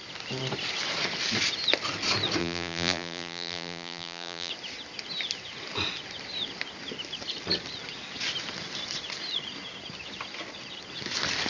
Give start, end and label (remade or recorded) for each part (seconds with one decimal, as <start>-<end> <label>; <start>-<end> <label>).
0.0-2.4 recorded; 2.4-4.5 remade; 4.5-11.5 recorded